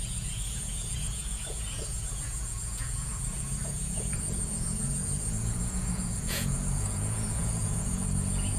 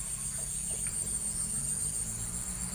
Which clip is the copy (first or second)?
first